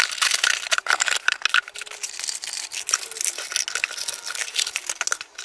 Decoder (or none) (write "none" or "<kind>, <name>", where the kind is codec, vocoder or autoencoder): none